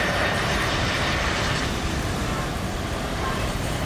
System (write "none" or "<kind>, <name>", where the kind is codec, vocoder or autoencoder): vocoder, BigVGAN v2